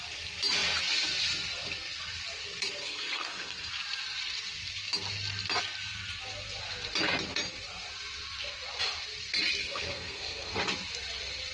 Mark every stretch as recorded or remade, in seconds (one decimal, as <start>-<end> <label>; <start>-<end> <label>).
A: 0.0-2.8 recorded; 2.8-3.7 remade; 3.7-9.6 recorded; 9.6-10.5 remade; 10.5-11.5 recorded